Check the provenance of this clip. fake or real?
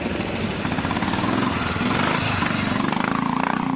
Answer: real